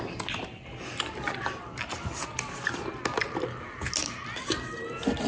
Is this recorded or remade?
recorded